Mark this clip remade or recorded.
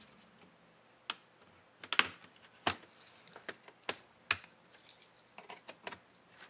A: recorded